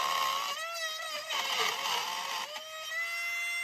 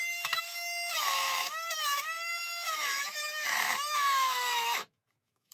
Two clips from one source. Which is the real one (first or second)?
first